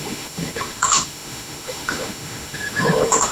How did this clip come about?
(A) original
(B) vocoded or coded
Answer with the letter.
B